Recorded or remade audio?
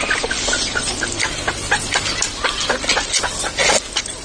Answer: recorded